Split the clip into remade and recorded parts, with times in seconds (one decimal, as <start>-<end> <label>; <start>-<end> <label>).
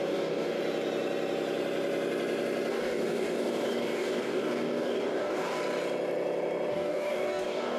0.0-0.6 remade; 0.6-2.7 recorded; 2.7-5.6 remade; 5.6-6.7 recorded; 6.7-7.8 remade